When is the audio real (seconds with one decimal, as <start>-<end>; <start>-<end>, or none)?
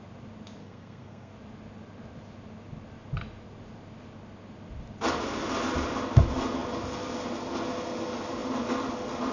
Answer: 0.0-0.6; 1.3-9.3